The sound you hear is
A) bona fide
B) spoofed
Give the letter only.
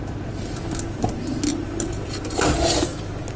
A